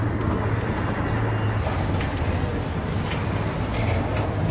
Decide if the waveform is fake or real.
real